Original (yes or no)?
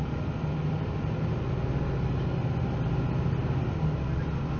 yes